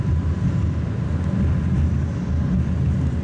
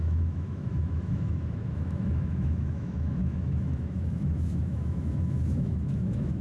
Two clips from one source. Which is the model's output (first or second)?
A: second